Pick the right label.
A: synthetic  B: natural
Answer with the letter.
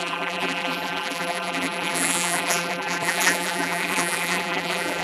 A